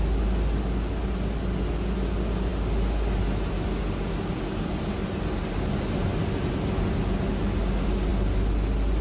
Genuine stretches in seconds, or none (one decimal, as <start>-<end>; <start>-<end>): 0.0-9.0